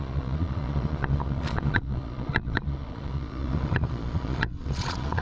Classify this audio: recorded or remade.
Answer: remade